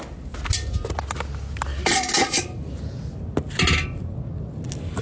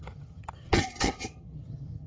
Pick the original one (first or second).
first